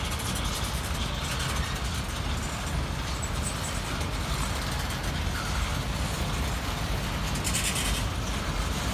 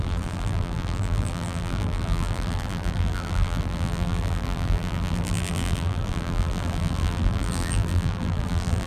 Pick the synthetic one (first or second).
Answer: second